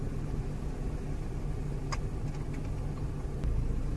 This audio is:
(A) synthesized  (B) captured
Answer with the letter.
B